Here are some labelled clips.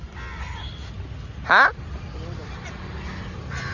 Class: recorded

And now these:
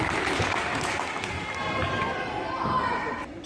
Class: recorded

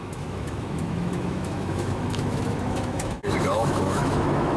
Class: remade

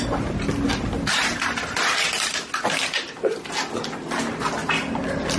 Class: recorded